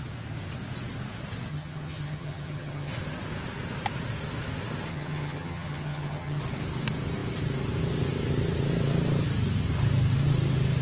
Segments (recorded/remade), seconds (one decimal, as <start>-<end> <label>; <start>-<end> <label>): 0.0-1.5 recorded; 1.5-2.9 remade; 2.9-4.9 recorded; 4.9-6.4 remade; 6.4-10.8 recorded